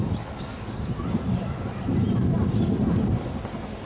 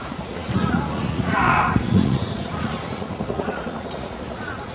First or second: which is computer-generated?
second